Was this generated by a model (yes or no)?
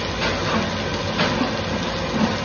no